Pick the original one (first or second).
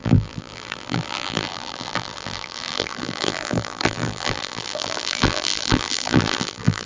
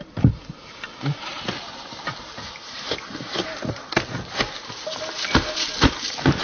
second